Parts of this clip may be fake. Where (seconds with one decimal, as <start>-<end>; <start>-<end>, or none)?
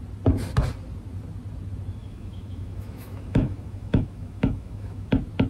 2.0-5.1